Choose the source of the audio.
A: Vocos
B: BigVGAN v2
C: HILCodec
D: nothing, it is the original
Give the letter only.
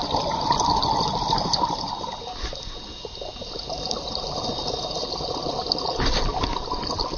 D